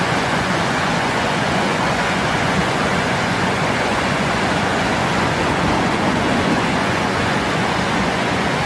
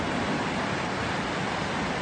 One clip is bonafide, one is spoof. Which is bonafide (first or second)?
second